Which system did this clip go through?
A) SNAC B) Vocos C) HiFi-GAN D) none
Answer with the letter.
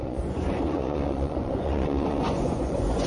B